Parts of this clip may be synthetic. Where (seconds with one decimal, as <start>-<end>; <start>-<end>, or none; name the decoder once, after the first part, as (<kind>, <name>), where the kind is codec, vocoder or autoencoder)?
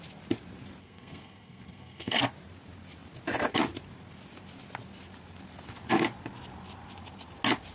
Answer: 0.8-2.2 (codec, SNAC)